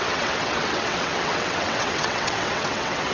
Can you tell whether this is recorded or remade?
remade